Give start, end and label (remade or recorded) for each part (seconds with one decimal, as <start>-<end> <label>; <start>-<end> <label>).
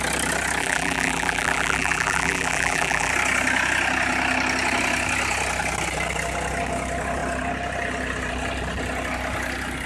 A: 0.0-0.6 recorded; 0.6-3.1 remade; 3.1-9.9 recorded